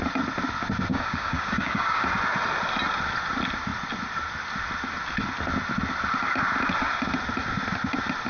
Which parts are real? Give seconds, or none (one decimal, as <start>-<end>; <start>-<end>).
0.0-0.9; 2.0-8.3